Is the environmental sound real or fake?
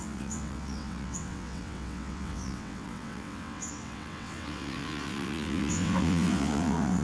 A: fake